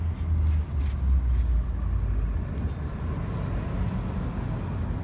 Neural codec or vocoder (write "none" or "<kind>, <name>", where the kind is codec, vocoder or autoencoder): none